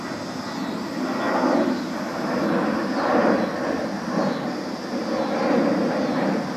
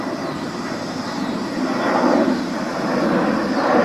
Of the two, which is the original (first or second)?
first